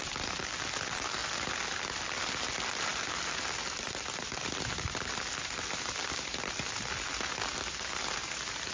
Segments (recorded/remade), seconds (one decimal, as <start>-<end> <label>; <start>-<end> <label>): 0.0-8.7 recorded